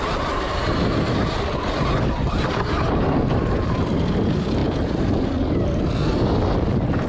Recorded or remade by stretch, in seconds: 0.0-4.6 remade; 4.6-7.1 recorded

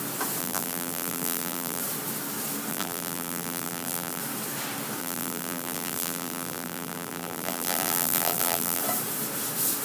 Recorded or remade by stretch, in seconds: 0.0-0.4 recorded; 0.4-1.8 remade; 1.8-2.7 recorded; 2.7-4.2 remade; 4.2-5.0 recorded; 5.0-8.8 remade; 8.8-9.8 recorded

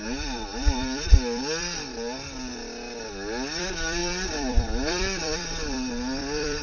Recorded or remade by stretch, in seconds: 0.0-2.5 remade; 2.5-3.1 recorded; 3.1-6.6 remade

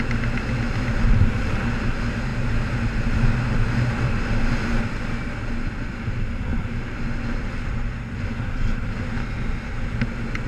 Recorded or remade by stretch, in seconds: 0.0-10.5 recorded

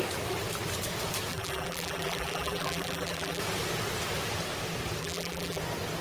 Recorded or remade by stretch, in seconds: 0.0-1.3 recorded; 1.3-3.4 remade; 3.4-5.0 recorded; 5.0-5.6 remade; 5.6-6.0 recorded

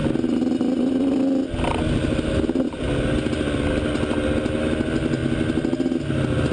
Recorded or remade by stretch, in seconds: 0.0-6.5 recorded

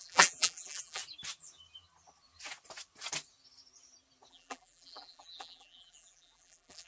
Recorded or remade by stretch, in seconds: 0.0-1.0 remade; 1.0-4.3 recorded; 4.3-6.9 remade

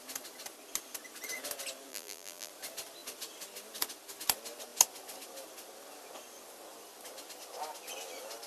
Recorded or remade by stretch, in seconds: 0.0-1.9 recorded; 1.9-2.5 remade; 2.5-8.5 recorded